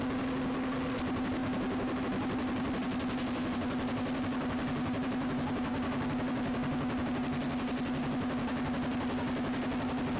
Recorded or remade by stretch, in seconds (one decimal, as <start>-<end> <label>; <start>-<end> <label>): 0.0-10.2 recorded